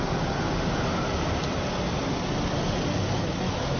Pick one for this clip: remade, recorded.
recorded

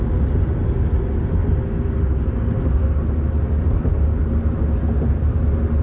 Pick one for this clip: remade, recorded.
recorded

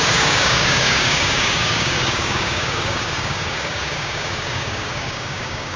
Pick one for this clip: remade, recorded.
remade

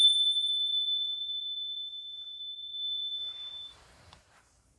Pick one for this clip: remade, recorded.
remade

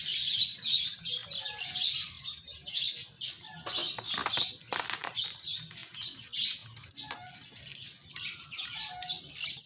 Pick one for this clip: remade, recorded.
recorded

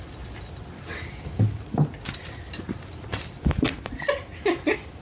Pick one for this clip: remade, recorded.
recorded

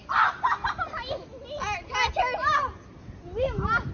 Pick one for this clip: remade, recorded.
recorded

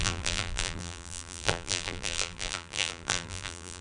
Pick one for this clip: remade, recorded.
remade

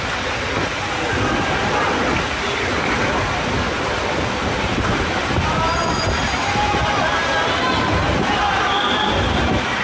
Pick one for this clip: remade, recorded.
recorded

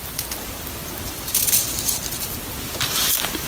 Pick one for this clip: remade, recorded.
remade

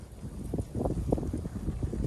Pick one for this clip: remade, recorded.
recorded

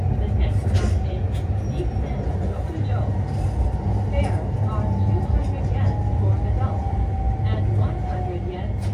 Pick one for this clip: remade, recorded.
recorded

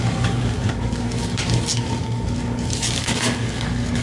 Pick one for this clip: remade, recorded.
remade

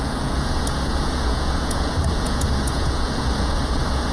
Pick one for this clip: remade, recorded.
remade